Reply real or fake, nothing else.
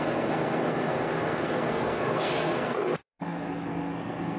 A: fake